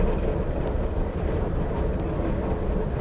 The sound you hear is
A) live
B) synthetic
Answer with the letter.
A